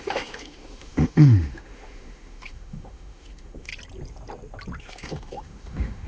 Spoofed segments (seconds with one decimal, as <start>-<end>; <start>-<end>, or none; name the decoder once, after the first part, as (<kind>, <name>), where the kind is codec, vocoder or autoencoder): 0.0-3.7 (autoencoder, DAC-VAE); 4.8-6.1